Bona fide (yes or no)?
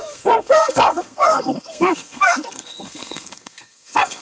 no